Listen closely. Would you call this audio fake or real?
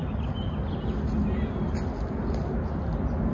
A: real